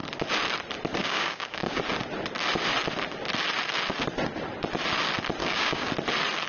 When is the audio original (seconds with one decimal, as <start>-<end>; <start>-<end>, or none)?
0.0-1.0; 1.8-5.4; 5.9-6.5